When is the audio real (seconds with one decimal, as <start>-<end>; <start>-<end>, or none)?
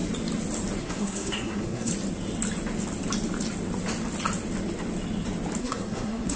0.0-0.8; 1.9-5.6